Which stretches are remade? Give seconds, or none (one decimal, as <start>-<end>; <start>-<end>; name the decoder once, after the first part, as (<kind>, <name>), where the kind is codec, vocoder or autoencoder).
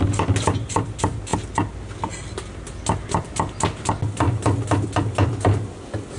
none